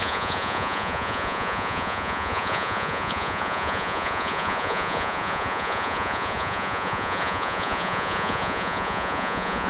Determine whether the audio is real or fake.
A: fake